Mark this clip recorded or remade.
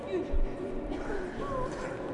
recorded